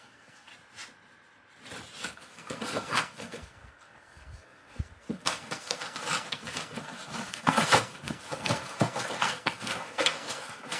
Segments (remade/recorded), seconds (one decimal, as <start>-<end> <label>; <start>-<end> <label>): 0.0-0.5 remade; 0.5-2.0 recorded; 2.0-10.8 remade